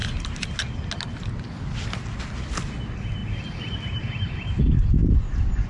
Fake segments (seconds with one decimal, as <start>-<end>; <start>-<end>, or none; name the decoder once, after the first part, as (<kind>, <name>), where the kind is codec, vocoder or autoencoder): none